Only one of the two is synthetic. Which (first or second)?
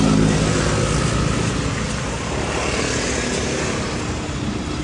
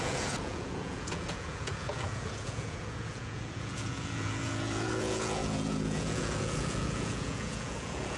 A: second